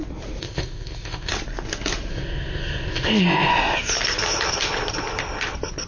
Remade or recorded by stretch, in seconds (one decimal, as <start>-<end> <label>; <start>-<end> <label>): 0.0-0.4 recorded; 0.4-1.3 remade; 1.3-2.1 recorded; 2.1-3.5 remade; 3.5-5.9 recorded